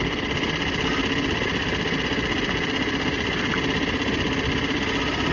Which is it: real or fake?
real